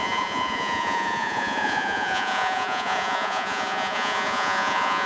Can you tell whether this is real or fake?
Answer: fake